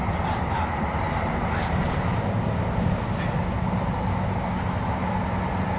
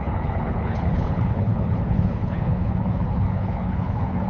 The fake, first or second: second